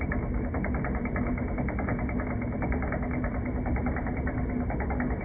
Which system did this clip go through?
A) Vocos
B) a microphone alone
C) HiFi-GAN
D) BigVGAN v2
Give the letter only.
B